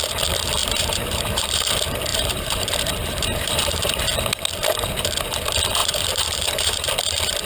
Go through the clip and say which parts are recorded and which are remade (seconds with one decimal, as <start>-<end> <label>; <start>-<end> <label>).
0.0-0.6 recorded; 0.6-1.7 remade; 1.7-2.1 recorded; 2.1-4.0 remade; 4.0-5.8 recorded; 5.8-7.0 remade; 7.0-7.5 recorded